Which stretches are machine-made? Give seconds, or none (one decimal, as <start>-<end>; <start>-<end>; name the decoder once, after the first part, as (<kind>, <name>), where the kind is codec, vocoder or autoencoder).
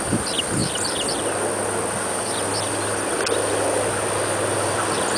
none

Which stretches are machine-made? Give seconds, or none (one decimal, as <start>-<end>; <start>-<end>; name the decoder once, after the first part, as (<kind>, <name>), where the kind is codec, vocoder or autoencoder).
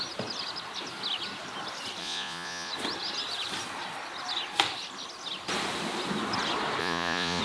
2.0-2.7 (vocoder, Vocos); 6.8-7.4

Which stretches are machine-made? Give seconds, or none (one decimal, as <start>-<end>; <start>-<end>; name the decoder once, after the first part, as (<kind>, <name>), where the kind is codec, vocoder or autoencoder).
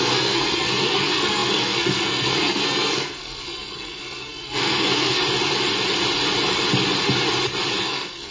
0.0-5.2 (codec, SNAC); 7.8-8.3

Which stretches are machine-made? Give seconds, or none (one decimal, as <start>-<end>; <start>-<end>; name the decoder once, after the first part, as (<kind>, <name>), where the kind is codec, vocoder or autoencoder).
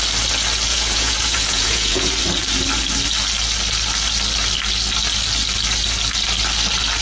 0.7-2.1 (vocoder, Vocos)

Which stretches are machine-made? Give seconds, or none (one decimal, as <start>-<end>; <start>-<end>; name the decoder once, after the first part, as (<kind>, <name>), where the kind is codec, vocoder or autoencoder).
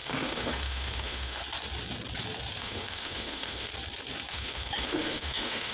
0.0-1.4 (autoencoder, DAC-VAE); 2.6-3.7; 4.3-5.7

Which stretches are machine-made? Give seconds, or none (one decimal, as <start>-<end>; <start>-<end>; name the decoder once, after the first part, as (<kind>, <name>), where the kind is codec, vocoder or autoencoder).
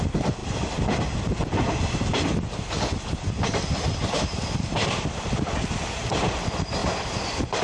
none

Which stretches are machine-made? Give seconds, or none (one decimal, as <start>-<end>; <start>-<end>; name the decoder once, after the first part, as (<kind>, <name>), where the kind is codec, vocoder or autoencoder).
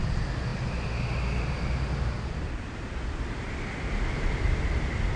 none